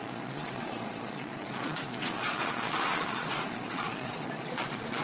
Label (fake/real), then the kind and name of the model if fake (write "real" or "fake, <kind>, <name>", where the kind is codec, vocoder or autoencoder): fake, vocoder, Vocos